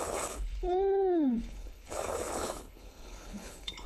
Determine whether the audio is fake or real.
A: fake